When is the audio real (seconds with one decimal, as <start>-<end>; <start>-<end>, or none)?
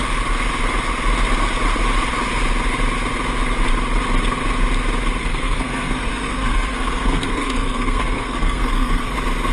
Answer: 0.0-5.2; 9.1-9.5